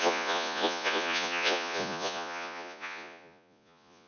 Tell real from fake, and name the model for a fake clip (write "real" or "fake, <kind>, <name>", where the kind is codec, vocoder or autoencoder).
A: fake, vocoder, Vocos